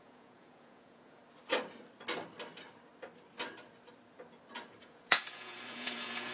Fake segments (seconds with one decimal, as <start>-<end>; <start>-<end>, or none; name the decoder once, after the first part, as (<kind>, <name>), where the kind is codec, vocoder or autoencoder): 0.0-1.2 (vocoder, Vocos); 4.8-6.3

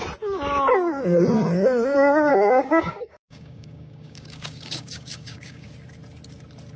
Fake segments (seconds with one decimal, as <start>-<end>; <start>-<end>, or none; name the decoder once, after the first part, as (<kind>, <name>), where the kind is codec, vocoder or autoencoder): 2.3-5.7 (codec, DAC)

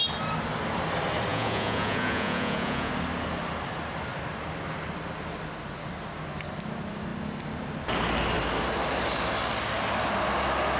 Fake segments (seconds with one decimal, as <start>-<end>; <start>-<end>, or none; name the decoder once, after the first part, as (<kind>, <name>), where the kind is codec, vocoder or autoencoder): 1.3-2.9 (vocoder, Vocos)

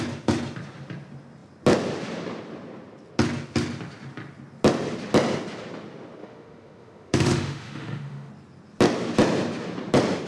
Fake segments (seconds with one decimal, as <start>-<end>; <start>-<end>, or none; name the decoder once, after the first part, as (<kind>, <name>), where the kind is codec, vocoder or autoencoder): 6.2-8.3 (autoencoder, DAC-VAE)

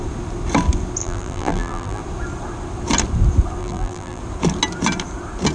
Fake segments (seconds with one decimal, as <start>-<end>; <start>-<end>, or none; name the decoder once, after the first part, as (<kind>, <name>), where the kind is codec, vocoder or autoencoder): 1.0-2.0 (vocoder, BigVGAN v2); 3.6-4.2

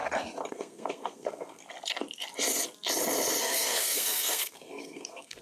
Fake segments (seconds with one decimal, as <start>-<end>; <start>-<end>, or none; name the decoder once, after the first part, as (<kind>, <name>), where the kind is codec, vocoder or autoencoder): 0.5-1.6 (codec, SNAC); 3.4-5.4

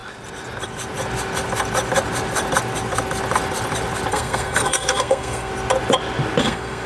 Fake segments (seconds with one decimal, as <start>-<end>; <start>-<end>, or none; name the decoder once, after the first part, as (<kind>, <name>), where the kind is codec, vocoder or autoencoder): 4.1-5.5 (codec, SNAC); 6.4-6.9